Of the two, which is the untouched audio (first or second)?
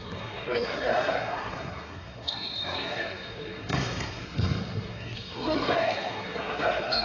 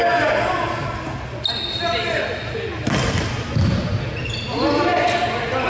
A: second